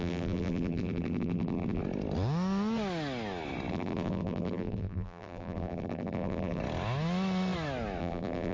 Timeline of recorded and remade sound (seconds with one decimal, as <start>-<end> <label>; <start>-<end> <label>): 0.0-1.8 remade; 1.8-3.7 recorded; 3.7-6.6 remade; 6.6-8.0 recorded; 8.0-8.5 remade